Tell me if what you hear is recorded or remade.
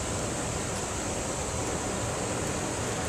recorded